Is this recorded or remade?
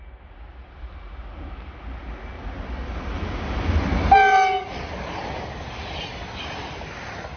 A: recorded